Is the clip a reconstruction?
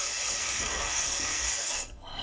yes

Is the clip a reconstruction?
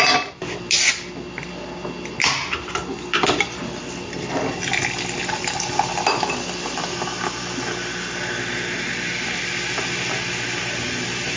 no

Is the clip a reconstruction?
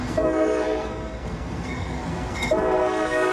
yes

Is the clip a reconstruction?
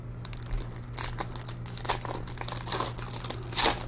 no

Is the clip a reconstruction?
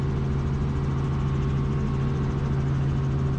no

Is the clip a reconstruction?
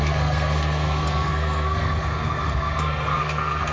yes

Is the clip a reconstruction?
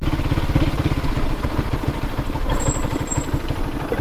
no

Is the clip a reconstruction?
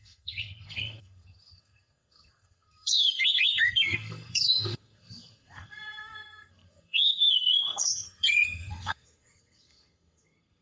yes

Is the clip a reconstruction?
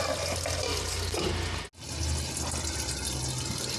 no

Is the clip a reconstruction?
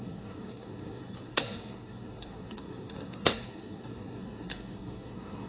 yes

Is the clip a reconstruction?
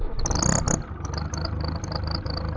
no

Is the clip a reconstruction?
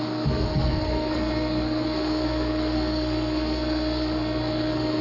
yes